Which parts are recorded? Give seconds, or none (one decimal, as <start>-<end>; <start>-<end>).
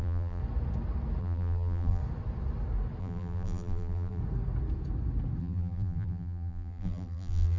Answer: 0.4-1.2; 2.0-3.0; 4.2-5.4